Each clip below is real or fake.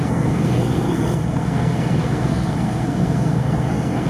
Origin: fake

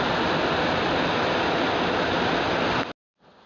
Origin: real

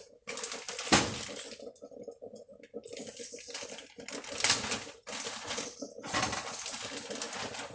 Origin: real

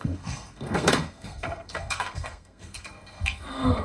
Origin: fake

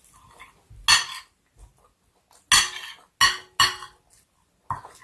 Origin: real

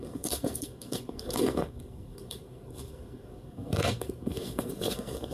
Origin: fake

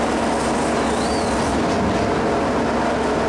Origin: real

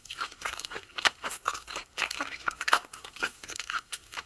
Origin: fake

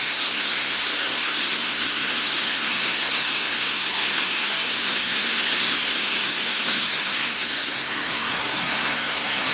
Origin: fake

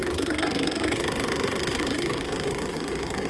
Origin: fake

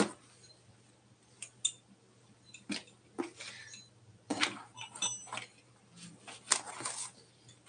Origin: real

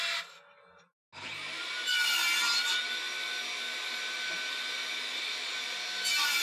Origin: real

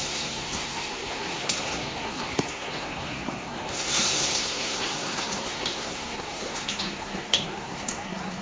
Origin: fake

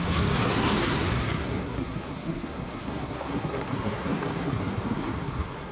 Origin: fake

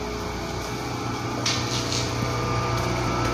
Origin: real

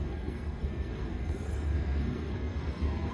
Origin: fake